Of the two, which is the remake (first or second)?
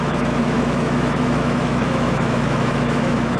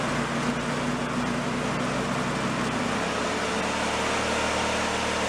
first